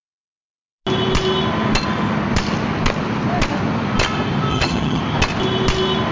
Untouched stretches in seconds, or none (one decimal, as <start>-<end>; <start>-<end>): 0.0-4.5; 5.0-6.1

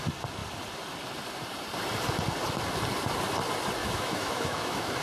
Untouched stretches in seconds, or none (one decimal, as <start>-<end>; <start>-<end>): 0.0-3.8